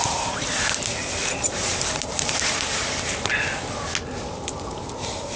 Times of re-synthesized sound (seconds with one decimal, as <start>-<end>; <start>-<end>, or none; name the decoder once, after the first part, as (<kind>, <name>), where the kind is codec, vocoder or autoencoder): 1.2-3.3 (vocoder, BigVGAN v2)

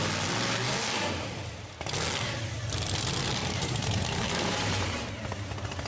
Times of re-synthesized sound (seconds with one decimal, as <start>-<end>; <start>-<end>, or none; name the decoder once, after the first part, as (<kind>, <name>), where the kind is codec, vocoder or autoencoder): 3.4-5.1 (vocoder, BigVGAN v2)

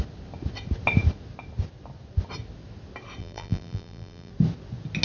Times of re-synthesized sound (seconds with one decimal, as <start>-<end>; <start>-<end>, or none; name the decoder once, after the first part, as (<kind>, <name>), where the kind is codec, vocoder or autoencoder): 3.2-4.3 (vocoder, BigVGAN v2)

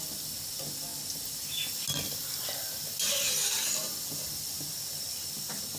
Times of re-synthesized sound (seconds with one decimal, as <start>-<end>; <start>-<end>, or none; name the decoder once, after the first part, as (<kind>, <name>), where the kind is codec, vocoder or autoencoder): none

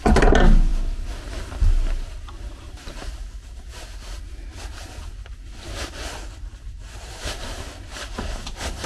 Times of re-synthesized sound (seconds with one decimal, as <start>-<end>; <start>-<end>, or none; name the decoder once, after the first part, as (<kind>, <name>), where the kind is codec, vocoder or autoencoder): none

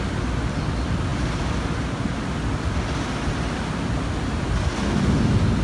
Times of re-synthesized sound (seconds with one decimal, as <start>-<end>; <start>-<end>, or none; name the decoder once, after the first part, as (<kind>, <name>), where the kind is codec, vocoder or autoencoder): none

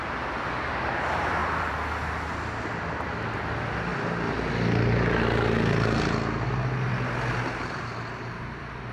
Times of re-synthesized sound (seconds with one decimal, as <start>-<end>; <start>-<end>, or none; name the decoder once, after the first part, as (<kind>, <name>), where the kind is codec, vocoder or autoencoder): 1.4-2.4 (vocoder, BigVGAN v2)

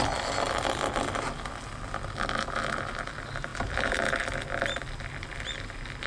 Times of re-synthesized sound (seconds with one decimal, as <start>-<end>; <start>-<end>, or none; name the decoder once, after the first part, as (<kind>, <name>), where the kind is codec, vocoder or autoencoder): none